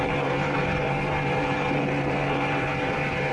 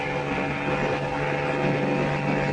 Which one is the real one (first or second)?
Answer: second